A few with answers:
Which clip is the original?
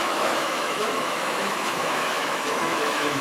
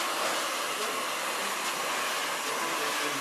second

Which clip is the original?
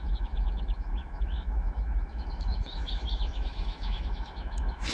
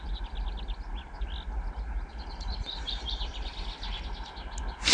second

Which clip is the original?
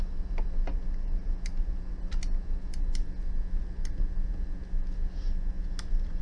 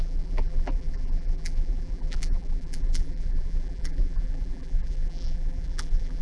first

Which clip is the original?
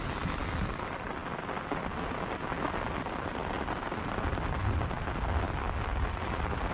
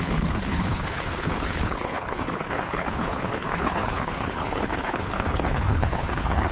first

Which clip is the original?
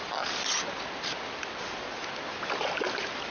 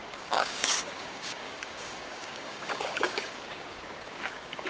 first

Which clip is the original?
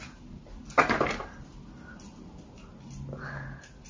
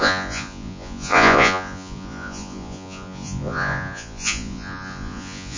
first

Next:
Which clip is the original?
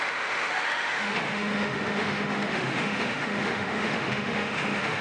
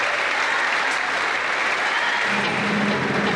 second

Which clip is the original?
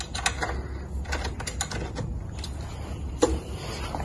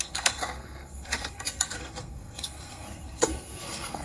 first